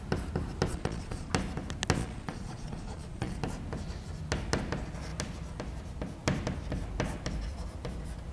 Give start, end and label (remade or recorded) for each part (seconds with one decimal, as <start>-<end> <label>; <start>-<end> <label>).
0.0-0.7 recorded; 0.7-1.3 remade; 1.3-2.0 recorded; 2.0-3.4 remade; 3.4-8.3 recorded

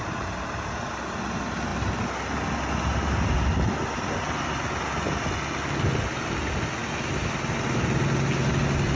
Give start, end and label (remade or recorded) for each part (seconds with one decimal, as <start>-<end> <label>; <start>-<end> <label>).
0.0-9.0 recorded

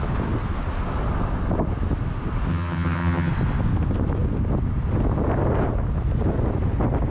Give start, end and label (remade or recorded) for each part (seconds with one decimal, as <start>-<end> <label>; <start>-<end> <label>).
0.0-2.5 recorded; 2.5-3.3 remade; 3.3-7.1 recorded

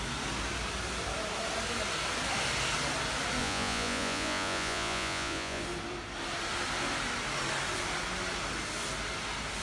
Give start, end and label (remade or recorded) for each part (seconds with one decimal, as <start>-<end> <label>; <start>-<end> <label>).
0.0-3.4 recorded; 3.4-5.6 remade; 5.6-9.6 recorded

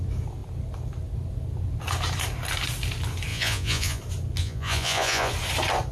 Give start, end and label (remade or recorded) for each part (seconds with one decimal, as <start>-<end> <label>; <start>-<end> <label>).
0.0-3.3 recorded; 3.3-4.0 remade; 4.0-4.4 recorded; 4.4-5.3 remade; 5.3-5.9 recorded

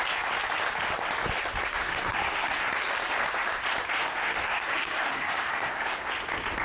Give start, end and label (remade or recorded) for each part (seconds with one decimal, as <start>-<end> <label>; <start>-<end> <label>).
0.0-1.8 recorded; 1.8-2.7 remade; 2.7-4.0 recorded; 4.0-6.1 remade; 6.1-6.6 recorded

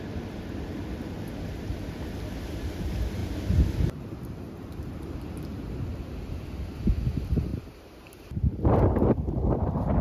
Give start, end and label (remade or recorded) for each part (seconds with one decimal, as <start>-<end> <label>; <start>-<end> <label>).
0.0-7.5 recorded; 7.5-8.3 remade; 8.3-10.0 recorded

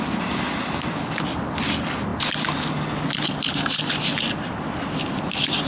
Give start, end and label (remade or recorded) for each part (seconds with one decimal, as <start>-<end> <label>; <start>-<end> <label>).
0.0-5.7 recorded